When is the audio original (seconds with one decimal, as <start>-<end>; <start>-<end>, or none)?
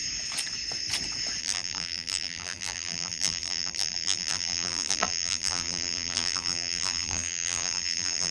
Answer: 0.0-1.4